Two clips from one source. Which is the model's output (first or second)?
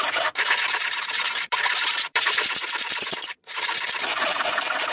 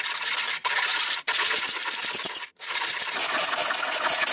first